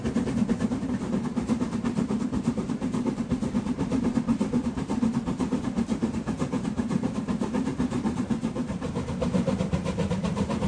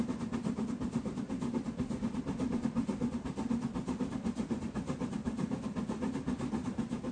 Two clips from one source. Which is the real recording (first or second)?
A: second